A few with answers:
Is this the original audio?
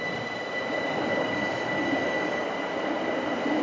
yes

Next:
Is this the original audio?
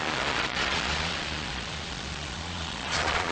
no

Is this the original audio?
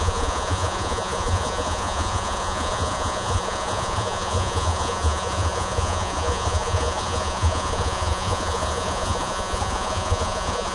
no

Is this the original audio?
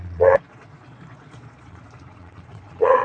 no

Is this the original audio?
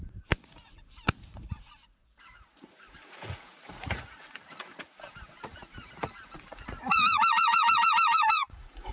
no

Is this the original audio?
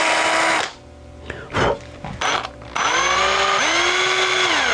yes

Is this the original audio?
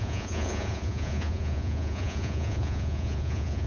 no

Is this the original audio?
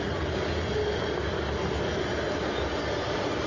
yes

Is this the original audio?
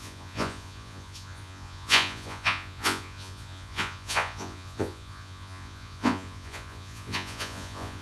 no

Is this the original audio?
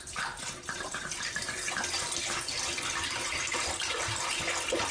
yes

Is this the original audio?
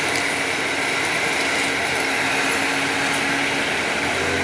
yes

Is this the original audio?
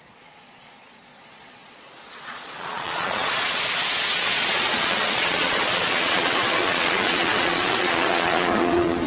no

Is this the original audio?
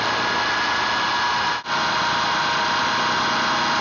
yes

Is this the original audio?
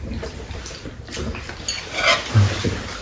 yes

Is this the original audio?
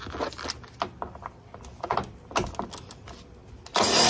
yes